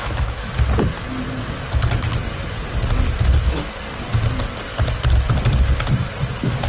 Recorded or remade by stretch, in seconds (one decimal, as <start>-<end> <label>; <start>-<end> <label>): 0.0-0.5 remade; 0.5-6.7 recorded